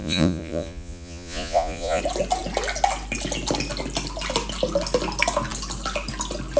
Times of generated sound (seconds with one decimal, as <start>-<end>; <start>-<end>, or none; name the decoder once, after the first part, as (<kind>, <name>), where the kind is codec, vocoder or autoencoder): 0.0-2.0 (vocoder, Vocos)